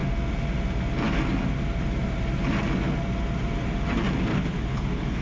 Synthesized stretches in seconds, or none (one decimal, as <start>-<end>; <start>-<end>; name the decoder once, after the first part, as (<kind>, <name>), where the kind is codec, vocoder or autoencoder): 4.3-5.2 (codec, HILCodec)